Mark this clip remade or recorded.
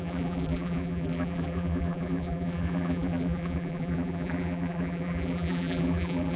remade